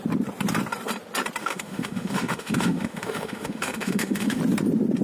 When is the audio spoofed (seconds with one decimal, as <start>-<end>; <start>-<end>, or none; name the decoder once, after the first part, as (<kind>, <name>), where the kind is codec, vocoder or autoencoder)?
1.4-4.4 (autoencoder, DAC-VAE)

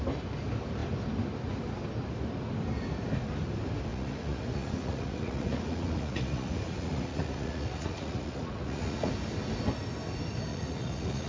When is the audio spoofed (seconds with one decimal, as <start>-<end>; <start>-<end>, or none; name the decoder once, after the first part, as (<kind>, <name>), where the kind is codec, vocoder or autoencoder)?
3.9-9.1 (vocoder, Vocos); 10.5-11.3

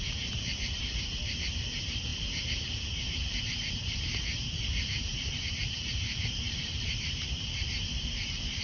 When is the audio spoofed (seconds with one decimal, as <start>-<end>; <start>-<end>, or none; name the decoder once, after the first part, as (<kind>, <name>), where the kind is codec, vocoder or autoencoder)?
0.0-8.6 (vocoder, BigVGAN v2)

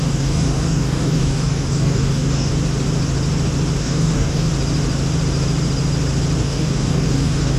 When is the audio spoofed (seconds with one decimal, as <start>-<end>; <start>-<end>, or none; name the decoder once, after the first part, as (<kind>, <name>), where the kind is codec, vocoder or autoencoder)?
0.0-2.5 (codec, DAC); 3.8-4.5; 6.4-7.6

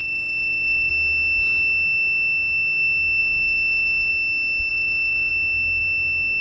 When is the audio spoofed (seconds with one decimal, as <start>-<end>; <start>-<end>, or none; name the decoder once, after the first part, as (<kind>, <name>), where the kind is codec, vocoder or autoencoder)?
0.0-0.9 (autoencoder, DAC-VAE); 3.2-4.1; 4.7-5.3

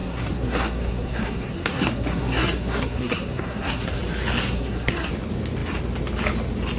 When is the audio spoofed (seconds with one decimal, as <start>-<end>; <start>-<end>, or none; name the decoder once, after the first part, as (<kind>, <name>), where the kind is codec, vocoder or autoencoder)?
0.0-4.0 (codec, SNAC); 4.4-5.1